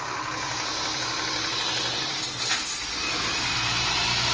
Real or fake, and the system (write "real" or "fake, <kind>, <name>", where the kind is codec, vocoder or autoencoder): real